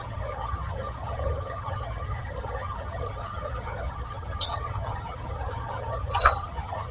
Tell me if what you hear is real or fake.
fake